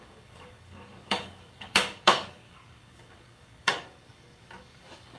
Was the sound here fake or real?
fake